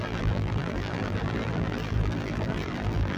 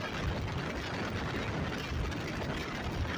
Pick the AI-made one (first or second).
first